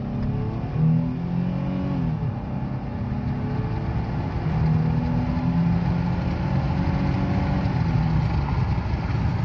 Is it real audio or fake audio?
real